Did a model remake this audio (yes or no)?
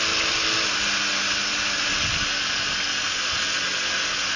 no